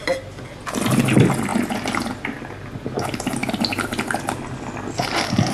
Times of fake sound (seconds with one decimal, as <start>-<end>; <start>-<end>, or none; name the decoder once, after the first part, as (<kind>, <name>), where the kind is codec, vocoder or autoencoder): none